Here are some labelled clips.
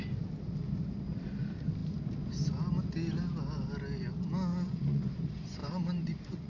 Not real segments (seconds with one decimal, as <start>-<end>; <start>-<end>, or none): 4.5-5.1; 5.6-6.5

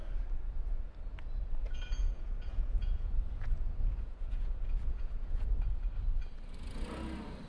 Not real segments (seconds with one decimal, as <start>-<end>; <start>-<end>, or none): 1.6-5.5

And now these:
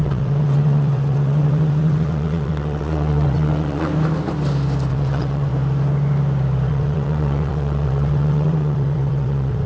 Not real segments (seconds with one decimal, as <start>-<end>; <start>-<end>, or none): 0.0-3.9; 4.9-5.5; 6.7-9.7